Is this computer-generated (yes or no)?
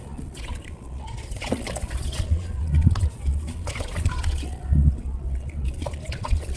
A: yes